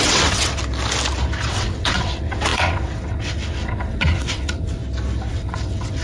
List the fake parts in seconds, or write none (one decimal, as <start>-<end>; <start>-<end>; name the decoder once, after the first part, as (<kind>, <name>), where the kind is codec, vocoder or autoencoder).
0.0-0.6 (vocoder, WaveNeXt); 1.5-4.8; 5.3-6.0